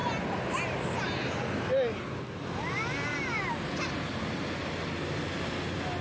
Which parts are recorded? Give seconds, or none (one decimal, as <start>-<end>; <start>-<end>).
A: 0.0-3.1; 3.7-6.0